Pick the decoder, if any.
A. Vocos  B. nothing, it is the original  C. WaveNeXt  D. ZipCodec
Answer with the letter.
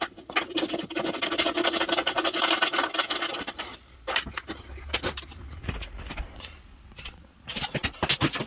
B